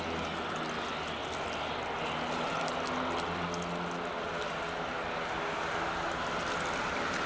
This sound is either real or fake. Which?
real